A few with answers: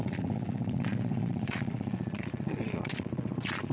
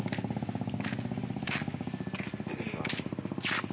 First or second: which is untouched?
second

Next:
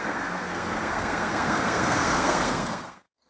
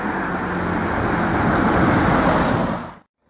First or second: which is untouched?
second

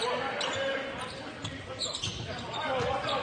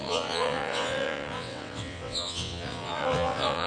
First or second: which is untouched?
first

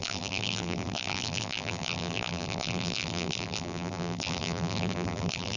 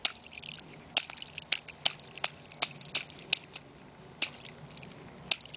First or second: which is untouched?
second